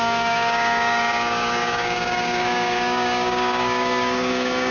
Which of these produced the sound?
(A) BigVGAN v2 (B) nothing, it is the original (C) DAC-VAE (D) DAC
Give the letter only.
D